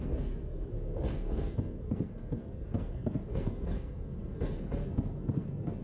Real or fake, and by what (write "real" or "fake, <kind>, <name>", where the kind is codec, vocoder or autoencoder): fake, codec, SNAC